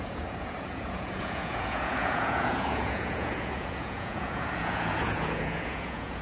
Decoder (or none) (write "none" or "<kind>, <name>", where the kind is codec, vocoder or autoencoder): vocoder, Vocos